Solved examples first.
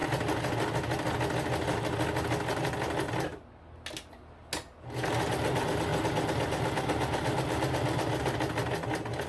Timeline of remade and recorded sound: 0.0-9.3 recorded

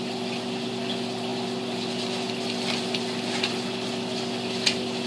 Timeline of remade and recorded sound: 0.0-5.1 recorded

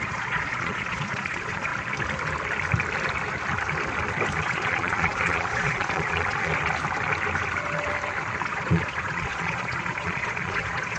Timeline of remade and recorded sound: 0.0-1.7 remade; 1.7-4.4 recorded; 4.4-6.5 remade; 6.5-8.5 recorded; 8.5-11.0 remade